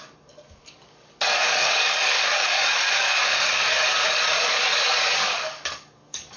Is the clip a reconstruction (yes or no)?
yes